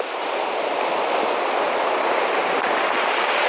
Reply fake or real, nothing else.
real